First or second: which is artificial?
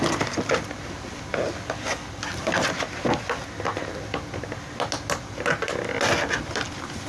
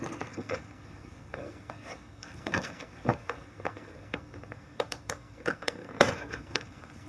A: second